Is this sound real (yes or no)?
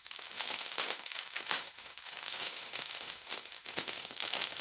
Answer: no